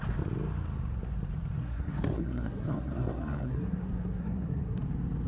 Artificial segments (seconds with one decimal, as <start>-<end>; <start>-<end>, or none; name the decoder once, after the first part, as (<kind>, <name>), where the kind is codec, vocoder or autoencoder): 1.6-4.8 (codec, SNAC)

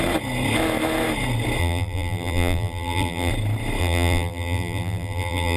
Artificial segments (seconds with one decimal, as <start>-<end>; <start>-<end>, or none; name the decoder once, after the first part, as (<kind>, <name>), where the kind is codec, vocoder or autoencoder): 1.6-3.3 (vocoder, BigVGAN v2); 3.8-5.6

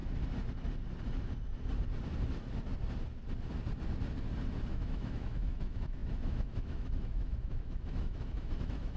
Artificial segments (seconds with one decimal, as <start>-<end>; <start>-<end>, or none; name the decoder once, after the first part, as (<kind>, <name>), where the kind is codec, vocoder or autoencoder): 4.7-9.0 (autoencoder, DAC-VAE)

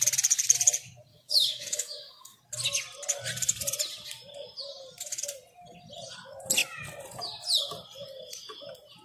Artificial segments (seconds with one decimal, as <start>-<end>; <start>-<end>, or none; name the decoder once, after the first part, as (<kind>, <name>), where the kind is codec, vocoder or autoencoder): 1.1-2.4 (codec, DAC)

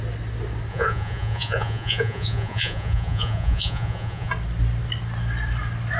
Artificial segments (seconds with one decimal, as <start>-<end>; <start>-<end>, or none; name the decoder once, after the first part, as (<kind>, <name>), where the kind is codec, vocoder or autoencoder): 0.7-4.3 (vocoder, Vocos)

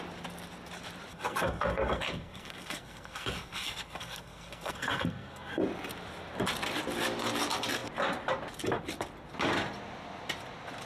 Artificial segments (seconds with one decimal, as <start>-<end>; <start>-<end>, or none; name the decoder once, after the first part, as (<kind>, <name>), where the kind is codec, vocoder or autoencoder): 1.1-5.6 (codec, SNAC)

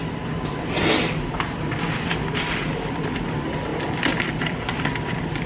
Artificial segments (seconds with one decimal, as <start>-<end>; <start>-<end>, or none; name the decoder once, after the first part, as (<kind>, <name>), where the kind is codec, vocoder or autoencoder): none